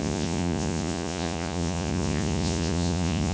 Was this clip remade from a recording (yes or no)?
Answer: yes